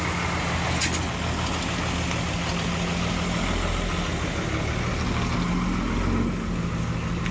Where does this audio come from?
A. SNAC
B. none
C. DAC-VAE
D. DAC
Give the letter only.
B